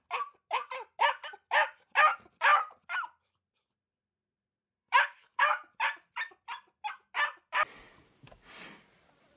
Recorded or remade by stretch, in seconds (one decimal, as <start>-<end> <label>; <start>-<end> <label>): 0.0-2.5 recorded; 2.5-6.3 remade; 6.3-9.4 recorded

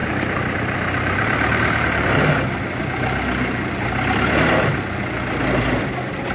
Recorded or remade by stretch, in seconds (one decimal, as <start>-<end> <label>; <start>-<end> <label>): 0.0-2.3 remade; 2.3-6.3 recorded

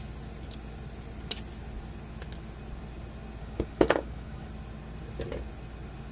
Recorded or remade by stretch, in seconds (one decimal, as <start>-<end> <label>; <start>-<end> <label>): 0.0-3.4 recorded; 3.4-4.5 remade; 4.5-6.1 recorded

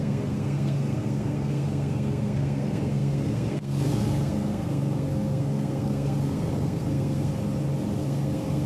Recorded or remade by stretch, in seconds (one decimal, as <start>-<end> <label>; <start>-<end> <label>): 0.0-7.3 remade; 7.3-8.0 recorded; 8.0-8.7 remade

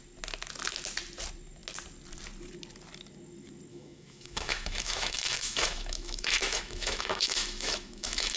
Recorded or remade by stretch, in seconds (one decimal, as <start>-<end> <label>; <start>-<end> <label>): 0.0-3.7 recorded; 3.7-8.4 remade

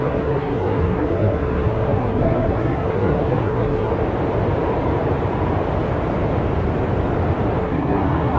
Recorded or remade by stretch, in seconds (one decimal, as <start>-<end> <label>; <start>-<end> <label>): 0.0-3.9 remade; 3.9-7.6 recorded; 7.6-8.4 remade

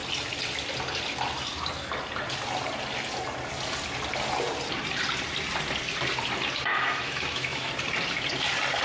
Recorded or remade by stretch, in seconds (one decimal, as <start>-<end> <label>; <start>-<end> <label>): 0.0-6.7 recorded; 6.7-7.7 remade; 7.7-8.8 recorded

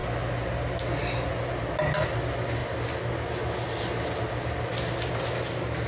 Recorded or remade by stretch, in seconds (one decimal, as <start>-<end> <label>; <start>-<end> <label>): 0.0-5.9 recorded